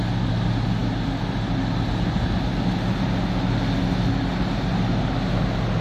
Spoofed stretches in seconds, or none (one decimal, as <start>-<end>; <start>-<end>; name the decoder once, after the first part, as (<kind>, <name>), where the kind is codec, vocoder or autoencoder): none